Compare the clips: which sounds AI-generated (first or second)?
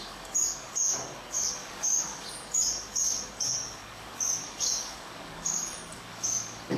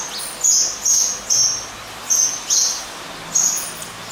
first